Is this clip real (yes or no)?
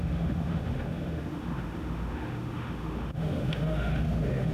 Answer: no